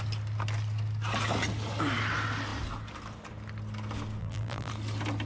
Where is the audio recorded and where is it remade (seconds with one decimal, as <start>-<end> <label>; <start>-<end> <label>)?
0.0-4.2 recorded; 4.2-4.7 remade; 4.7-5.3 recorded